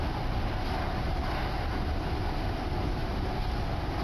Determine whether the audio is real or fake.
real